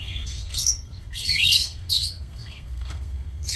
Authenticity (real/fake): fake